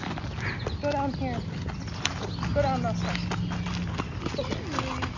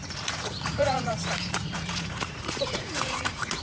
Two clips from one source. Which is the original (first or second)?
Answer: first